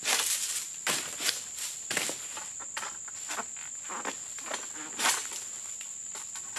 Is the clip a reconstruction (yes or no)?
no